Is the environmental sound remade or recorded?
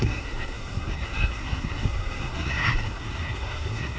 remade